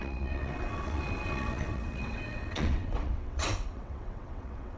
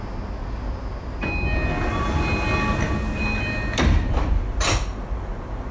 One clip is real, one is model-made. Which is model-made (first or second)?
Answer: first